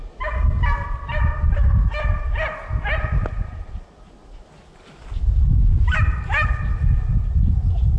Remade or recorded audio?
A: recorded